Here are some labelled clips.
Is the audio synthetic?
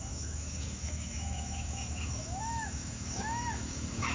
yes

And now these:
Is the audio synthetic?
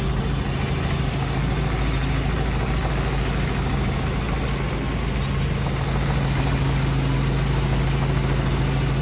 no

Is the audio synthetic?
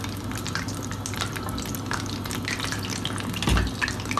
no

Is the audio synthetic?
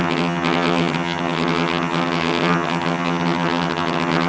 yes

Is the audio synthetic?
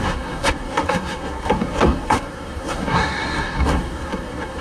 yes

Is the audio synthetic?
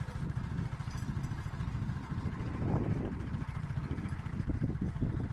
no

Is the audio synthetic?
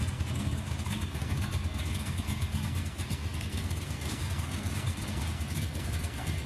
yes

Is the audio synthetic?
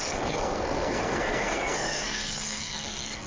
yes